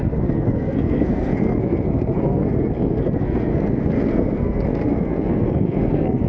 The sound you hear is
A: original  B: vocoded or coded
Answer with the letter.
B